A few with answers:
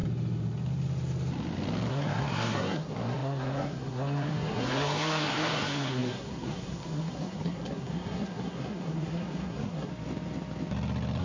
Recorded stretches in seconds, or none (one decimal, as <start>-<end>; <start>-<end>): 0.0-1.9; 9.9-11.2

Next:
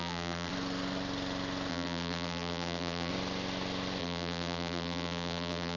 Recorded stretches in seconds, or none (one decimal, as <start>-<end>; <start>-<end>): 0.5-1.7; 3.1-4.0

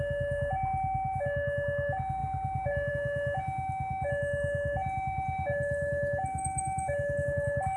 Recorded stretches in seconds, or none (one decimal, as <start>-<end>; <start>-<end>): 0.0-7.8